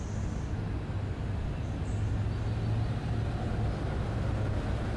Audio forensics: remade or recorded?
recorded